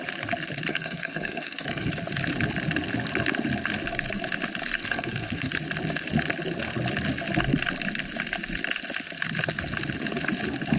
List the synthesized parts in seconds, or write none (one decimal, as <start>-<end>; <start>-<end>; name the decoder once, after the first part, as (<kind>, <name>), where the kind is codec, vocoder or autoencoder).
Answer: 0.7-1.9 (codec, SNAC); 4.8-5.5